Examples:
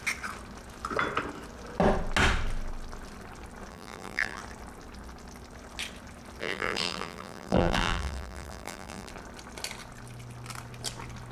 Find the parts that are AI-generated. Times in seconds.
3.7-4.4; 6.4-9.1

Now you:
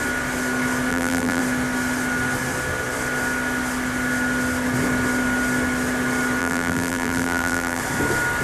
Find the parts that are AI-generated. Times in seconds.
0.9-1.4; 6.4-7.8